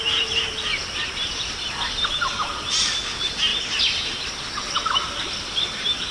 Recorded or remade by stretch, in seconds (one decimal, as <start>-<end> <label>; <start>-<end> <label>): 0.0-6.1 recorded